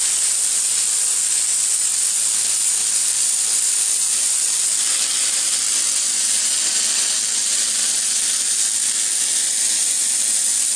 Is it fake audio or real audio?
real